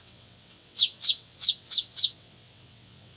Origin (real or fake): fake